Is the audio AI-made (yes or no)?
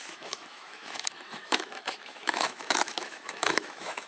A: yes